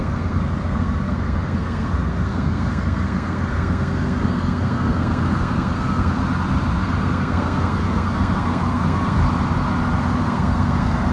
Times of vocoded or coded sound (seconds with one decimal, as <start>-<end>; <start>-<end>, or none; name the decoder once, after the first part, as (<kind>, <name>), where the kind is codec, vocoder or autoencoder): 0.0-6.2 (codec, SNAC); 6.8-9.2; 10.2-11.1